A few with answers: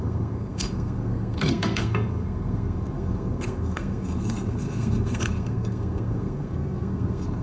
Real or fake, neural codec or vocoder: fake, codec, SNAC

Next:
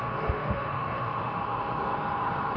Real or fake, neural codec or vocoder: fake, autoencoder, DAC-VAE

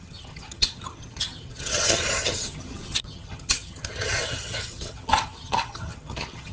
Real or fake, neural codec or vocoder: fake, vocoder, HiFi-GAN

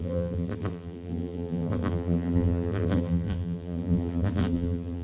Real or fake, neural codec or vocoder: fake, vocoder, BigVGAN v2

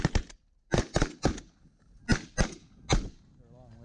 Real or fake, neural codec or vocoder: real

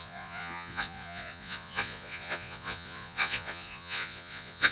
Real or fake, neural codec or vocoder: fake, vocoder, Vocos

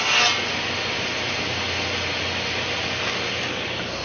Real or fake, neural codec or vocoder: real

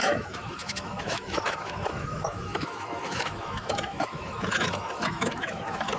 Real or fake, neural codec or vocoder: fake, autoencoder, DAC-VAE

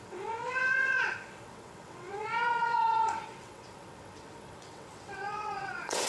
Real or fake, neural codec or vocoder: fake, vocoder, WaveNeXt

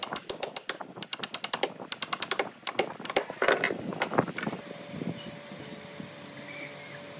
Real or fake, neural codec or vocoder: real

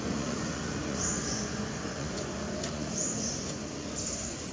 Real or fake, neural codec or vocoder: fake, vocoder, Vocos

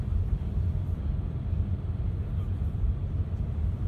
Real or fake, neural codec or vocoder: fake, vocoder, BigVGAN v2